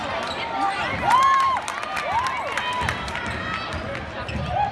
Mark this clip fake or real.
real